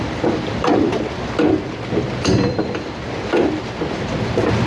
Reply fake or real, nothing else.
fake